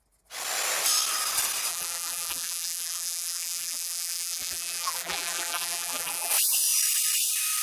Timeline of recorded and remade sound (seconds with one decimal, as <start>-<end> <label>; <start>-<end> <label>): 0.0-1.7 recorded; 1.7-6.3 remade; 6.3-7.6 recorded